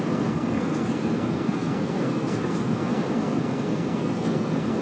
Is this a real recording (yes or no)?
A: no